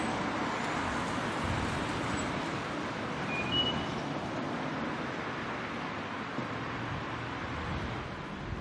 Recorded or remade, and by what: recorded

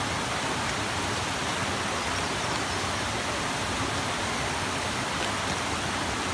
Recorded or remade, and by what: recorded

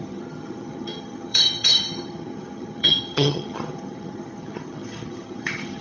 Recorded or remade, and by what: remade, vocoder, HiFi-GAN